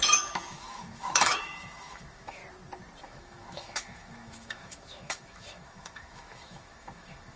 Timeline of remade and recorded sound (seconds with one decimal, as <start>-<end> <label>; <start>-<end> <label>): 0.0-2.4 remade; 2.4-3.0 recorded; 3.0-7.4 remade